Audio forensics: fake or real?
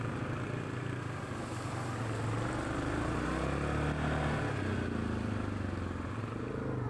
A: real